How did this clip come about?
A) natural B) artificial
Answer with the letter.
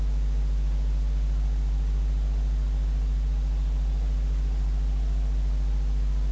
A